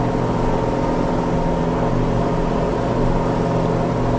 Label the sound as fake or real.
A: real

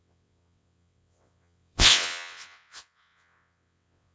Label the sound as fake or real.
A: fake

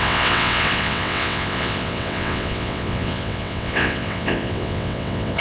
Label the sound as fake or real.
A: fake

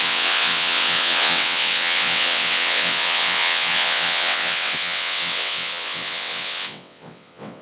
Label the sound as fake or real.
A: fake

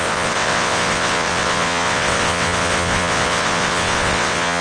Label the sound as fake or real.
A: fake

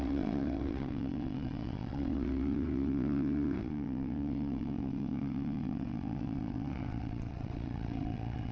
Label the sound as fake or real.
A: fake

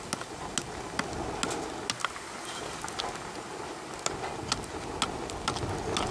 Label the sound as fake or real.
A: real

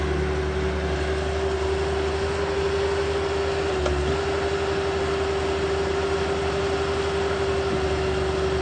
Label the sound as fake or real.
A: real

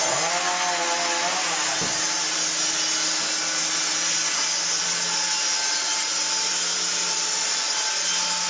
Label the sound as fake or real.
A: real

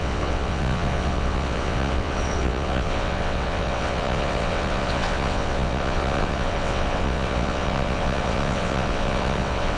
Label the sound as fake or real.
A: fake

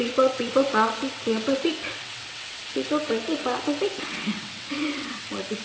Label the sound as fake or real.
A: fake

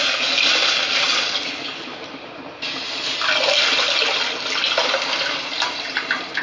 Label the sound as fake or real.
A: real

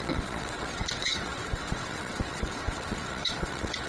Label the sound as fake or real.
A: fake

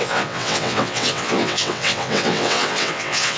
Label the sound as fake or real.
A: fake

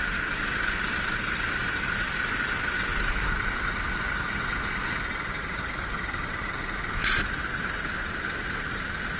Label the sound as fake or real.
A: real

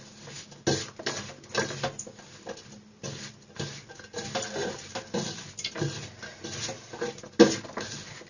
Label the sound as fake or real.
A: real